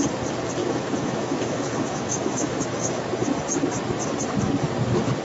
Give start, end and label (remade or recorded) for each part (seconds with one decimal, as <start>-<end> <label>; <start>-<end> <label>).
0.0-0.6 recorded; 0.6-2.6 remade; 2.6-5.2 recorded